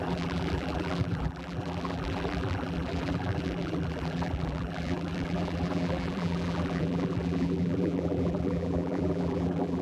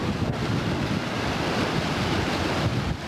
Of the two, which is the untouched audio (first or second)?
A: second